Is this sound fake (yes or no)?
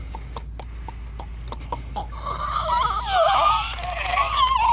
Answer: no